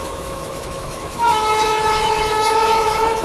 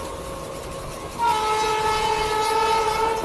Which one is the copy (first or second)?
first